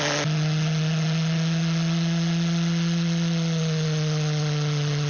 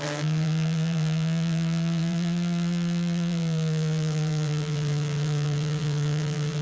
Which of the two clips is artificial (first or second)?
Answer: second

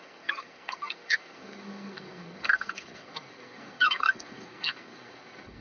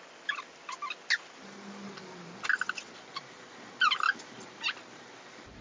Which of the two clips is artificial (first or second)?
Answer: first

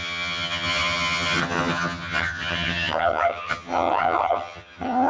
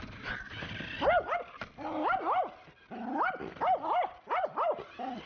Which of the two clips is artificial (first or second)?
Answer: first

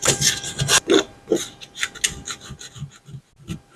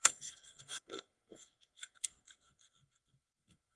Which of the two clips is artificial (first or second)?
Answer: second